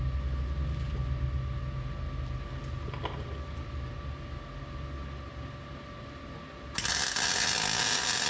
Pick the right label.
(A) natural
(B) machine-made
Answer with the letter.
A